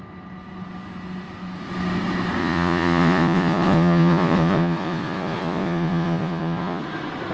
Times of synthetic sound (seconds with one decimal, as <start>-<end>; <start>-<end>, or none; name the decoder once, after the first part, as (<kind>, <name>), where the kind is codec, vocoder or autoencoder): 2.4-6.8 (vocoder, Vocos)